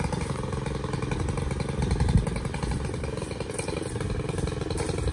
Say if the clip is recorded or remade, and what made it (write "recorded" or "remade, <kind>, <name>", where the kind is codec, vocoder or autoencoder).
recorded